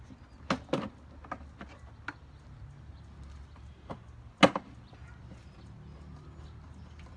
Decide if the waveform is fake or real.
real